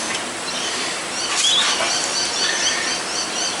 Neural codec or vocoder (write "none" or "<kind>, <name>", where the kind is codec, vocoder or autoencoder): none